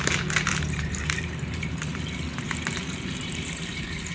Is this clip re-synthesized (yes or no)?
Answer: yes